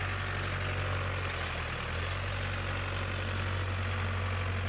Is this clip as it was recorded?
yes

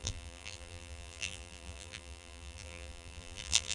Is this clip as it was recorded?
no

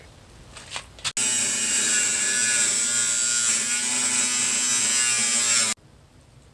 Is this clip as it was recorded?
yes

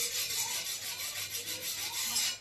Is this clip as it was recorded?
yes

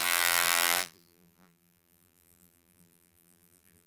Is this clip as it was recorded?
no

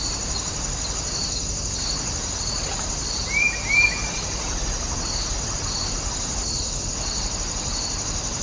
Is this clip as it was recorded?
yes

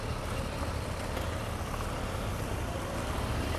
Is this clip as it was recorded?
yes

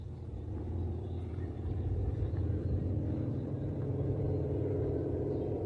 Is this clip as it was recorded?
no